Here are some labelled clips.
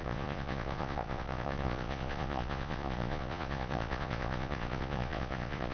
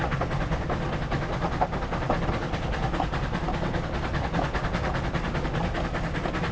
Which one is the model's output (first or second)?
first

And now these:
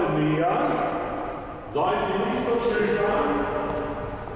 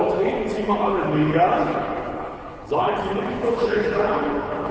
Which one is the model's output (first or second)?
second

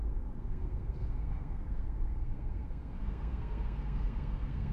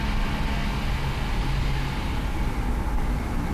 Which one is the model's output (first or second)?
first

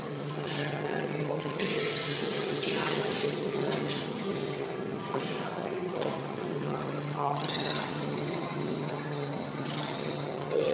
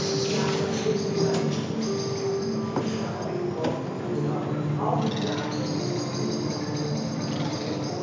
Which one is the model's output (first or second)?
first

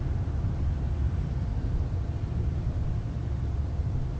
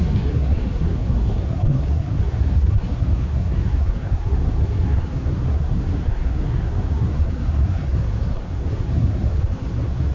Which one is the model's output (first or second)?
second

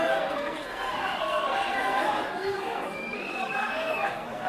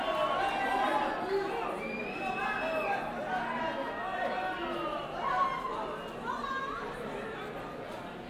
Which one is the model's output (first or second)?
first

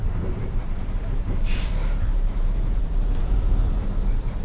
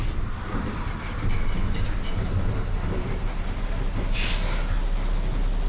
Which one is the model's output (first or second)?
first